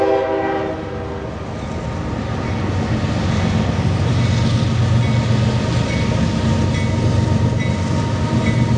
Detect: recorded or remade recorded